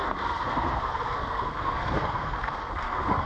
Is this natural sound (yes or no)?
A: no